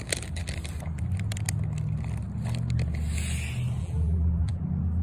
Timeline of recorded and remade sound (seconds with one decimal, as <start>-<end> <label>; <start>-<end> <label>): 0.0-3.8 recorded; 3.8-4.6 remade; 4.6-5.0 recorded